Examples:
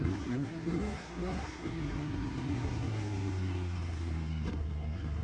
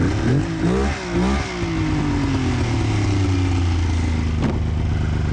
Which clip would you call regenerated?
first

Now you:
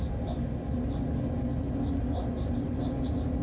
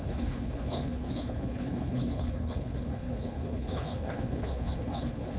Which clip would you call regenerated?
second